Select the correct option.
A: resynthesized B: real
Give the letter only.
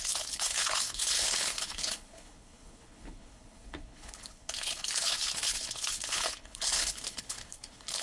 A